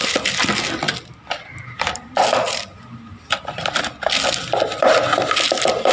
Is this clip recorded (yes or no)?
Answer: yes